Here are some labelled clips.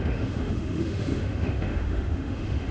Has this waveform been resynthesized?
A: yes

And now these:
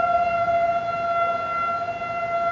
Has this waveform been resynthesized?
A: no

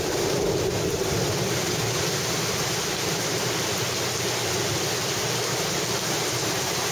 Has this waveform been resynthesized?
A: no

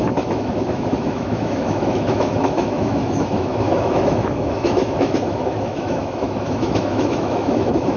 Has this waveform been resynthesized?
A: yes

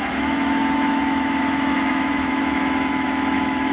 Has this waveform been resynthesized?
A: yes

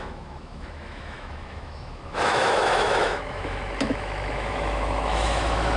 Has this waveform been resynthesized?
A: yes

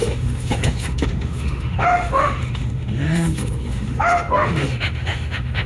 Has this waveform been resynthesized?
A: yes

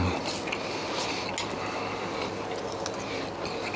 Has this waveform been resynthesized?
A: no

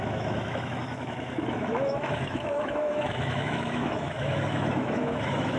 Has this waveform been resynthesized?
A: yes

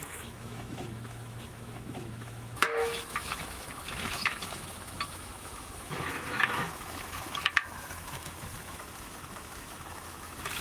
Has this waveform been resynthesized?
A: yes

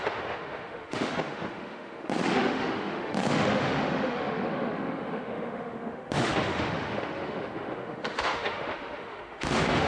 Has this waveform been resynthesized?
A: yes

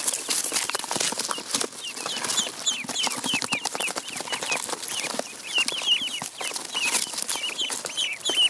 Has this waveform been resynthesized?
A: no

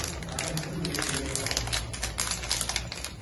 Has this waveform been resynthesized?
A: no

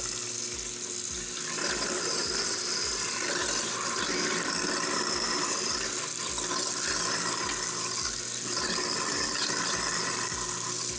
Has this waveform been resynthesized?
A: no